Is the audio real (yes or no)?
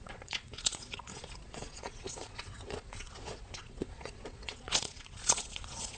no